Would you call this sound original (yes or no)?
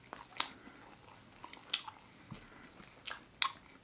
yes